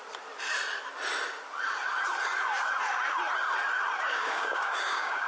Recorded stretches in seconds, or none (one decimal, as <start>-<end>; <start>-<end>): 0.0-4.1